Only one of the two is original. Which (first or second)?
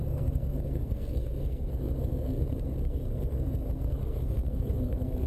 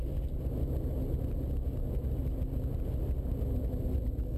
second